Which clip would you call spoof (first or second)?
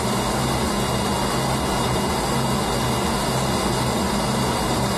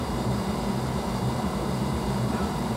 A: second